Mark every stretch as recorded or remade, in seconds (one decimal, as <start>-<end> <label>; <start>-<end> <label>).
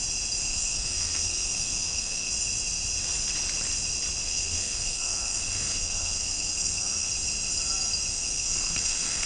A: 0.0-0.4 recorded; 0.4-2.3 remade; 2.3-4.2 recorded; 4.2-7.1 remade; 7.1-8.1 recorded; 8.1-9.3 remade